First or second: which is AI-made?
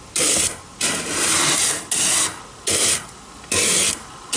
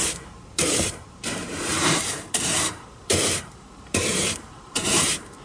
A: second